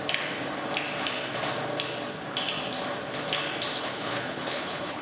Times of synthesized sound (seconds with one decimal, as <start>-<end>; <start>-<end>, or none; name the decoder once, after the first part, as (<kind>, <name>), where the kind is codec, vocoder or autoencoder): 3.8-5.0 (codec, HILCodec)